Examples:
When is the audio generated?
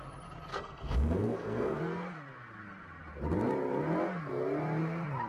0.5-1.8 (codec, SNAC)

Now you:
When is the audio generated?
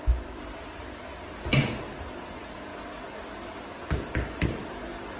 none